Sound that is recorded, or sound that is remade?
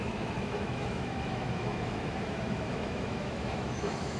remade